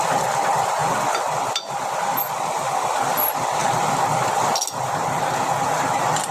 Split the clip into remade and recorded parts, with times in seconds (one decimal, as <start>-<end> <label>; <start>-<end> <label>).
0.0-6.3 recorded